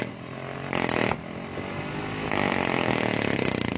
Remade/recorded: recorded